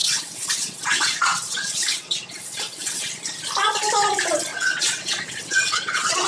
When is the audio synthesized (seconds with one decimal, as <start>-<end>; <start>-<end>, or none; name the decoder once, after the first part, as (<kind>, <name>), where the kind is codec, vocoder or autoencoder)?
0.0-3.1 (vocoder, WaveNeXt); 4.5-6.3